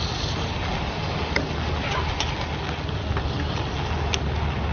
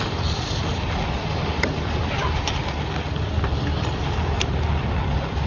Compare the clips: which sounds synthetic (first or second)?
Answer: second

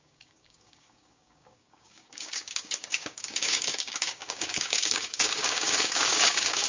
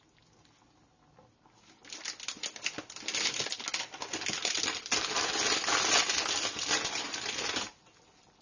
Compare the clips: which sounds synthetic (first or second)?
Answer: first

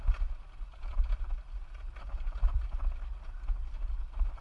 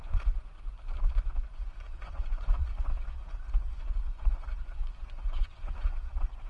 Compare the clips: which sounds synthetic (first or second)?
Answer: second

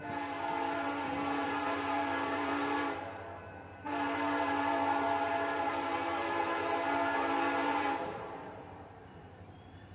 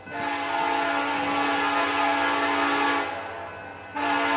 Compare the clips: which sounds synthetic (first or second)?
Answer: first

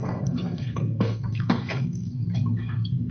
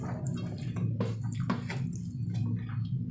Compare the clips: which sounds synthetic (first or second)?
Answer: first